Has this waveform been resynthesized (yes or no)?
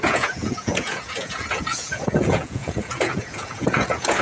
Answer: yes